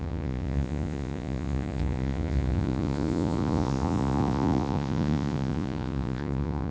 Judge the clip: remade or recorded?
remade